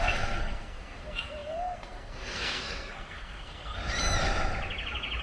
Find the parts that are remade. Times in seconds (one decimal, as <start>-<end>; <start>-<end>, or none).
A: 0.0-3.8

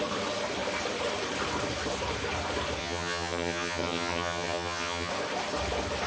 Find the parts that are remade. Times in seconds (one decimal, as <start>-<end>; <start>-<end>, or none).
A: 2.8-5.1